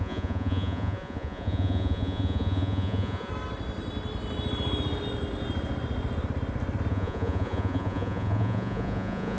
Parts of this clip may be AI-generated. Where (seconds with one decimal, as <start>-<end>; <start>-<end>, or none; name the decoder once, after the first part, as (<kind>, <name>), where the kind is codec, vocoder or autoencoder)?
0.0-3.3 (vocoder, Vocos); 6.9-9.4